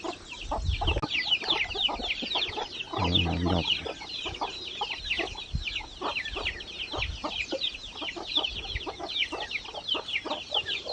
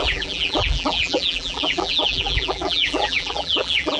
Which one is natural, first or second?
first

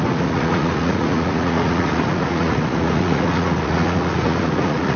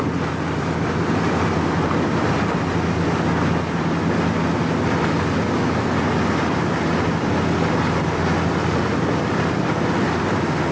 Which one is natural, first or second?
second